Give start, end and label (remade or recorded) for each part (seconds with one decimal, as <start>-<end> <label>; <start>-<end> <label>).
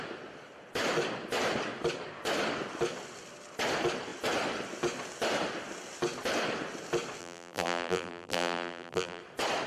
0.0-7.2 recorded; 7.2-9.2 remade; 9.2-9.7 recorded